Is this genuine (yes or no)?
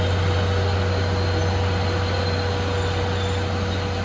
yes